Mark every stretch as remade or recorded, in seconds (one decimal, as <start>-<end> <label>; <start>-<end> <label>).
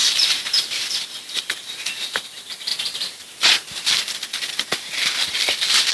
0.0-1.4 remade; 1.4-2.7 recorded; 2.7-3.5 remade; 3.5-5.9 recorded